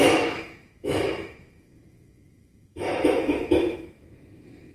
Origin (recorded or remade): remade